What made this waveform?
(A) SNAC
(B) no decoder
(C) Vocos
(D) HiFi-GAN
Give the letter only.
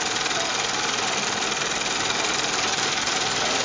B